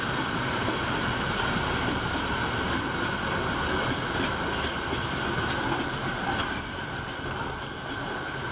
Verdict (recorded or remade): recorded